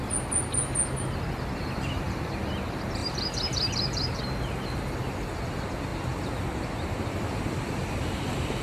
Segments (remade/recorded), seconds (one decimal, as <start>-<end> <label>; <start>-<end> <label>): 0.0-3.0 recorded; 3.0-4.2 remade; 4.2-8.6 recorded